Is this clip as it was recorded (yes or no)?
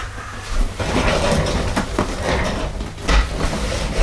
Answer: yes